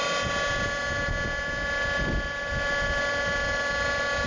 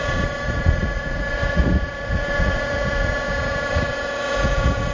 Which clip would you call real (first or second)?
first